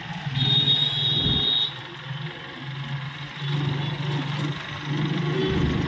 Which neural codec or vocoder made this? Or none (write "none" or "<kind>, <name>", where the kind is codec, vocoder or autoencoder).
none